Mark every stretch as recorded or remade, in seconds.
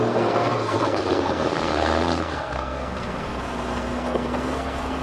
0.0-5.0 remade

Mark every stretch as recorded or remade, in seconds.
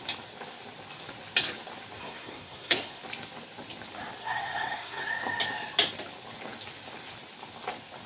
0.0-2.0 recorded; 2.0-3.0 remade; 3.0-4.2 recorded; 4.2-5.1 remade; 5.1-8.1 recorded